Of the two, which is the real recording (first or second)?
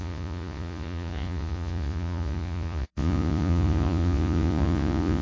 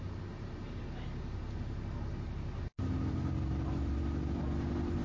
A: second